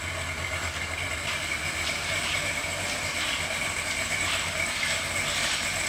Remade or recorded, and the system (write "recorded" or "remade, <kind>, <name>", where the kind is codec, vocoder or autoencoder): recorded